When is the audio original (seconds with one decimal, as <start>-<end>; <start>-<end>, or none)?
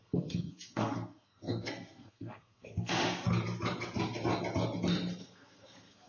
2.9-5.2